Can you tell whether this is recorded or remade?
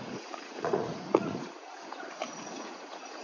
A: remade